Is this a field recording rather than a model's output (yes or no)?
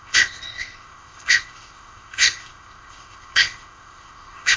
no